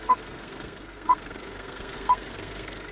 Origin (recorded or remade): remade